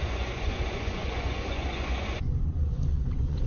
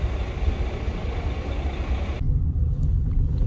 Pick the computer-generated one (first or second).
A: first